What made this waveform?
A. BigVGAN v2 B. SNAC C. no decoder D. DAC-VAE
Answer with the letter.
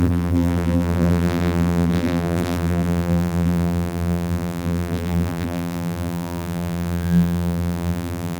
A